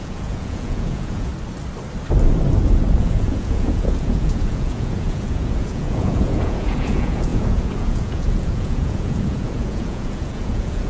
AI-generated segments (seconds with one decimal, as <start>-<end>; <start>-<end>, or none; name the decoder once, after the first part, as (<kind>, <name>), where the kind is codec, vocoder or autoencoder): 0.0-1.3 (vocoder, Vocos); 3.0-10.9